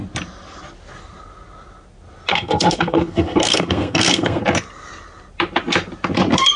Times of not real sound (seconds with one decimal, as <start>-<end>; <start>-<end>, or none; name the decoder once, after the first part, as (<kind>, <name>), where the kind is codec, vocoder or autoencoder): 2.3-4.4 (codec, SNAC)